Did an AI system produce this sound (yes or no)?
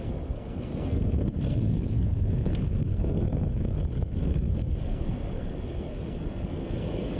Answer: yes